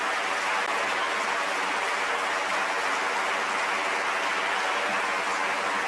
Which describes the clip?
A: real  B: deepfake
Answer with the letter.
A